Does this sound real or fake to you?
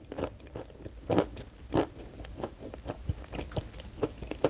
real